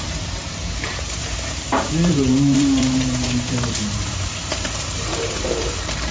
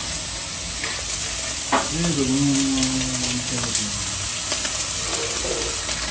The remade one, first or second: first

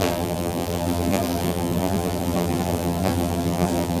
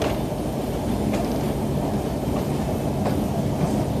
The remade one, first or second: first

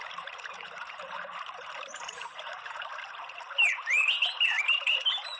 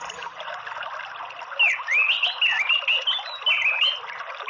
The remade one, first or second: first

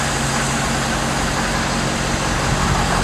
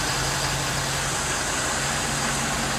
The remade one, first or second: second